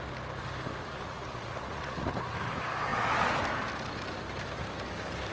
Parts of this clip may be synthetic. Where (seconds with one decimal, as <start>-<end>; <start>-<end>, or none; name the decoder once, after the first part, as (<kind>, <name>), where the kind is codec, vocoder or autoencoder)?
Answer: 0.8-2.1 (vocoder, Vocos)